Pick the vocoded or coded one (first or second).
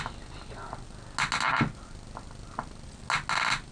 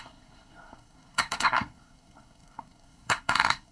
second